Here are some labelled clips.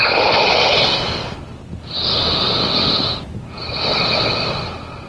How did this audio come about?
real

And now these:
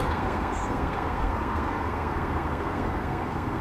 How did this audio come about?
fake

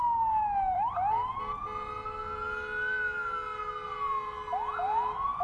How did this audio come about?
real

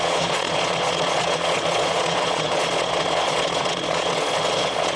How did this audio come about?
fake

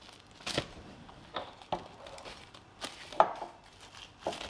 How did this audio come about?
real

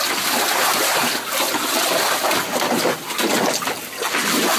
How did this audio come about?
real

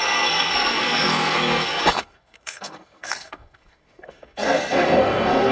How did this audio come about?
fake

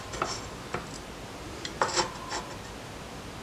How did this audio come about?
real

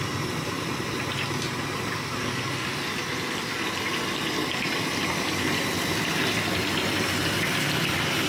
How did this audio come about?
real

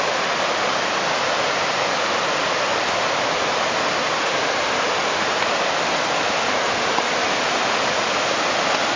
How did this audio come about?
real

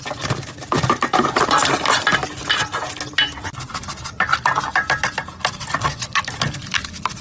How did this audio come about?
real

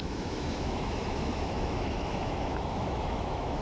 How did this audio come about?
fake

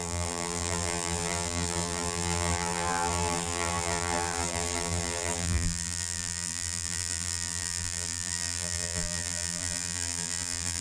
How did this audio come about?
fake